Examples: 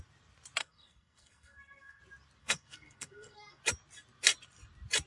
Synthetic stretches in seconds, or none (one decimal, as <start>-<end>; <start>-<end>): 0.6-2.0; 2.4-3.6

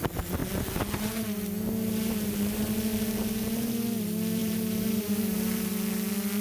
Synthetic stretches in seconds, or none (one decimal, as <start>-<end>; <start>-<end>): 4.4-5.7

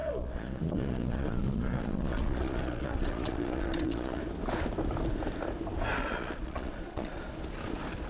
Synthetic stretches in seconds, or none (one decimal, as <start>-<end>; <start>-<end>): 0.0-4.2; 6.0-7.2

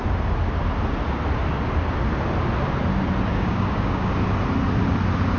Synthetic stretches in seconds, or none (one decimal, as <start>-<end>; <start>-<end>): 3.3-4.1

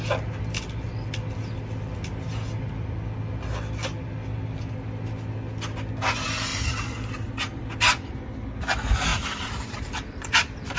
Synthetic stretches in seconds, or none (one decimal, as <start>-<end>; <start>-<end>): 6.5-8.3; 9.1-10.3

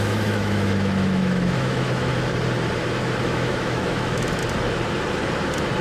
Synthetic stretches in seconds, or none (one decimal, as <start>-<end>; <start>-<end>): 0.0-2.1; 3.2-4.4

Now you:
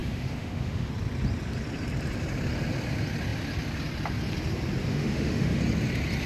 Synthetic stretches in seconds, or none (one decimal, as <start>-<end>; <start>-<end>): 0.0-0.9; 4.9-5.6